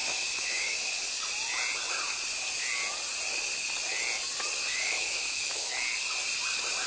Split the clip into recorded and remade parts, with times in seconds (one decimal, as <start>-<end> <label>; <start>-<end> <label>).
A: 0.0-0.9 remade; 0.9-4.7 recorded; 4.7-5.7 remade; 5.7-6.9 recorded